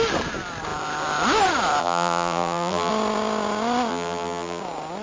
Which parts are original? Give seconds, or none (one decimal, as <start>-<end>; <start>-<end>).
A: 0.0-1.8; 2.9-3.9; 4.6-5.0